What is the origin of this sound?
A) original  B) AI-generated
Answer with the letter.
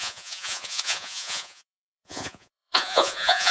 B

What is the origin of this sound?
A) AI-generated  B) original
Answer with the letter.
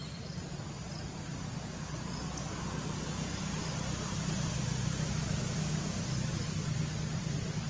B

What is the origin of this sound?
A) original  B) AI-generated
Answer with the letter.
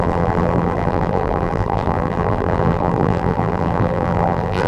B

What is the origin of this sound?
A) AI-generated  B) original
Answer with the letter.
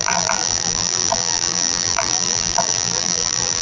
A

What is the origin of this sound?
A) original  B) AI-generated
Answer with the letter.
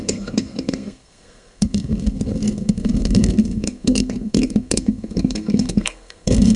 B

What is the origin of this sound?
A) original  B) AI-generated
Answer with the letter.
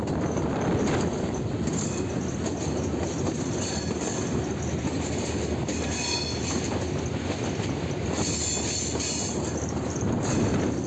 A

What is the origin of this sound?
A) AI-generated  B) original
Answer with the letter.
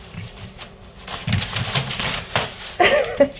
A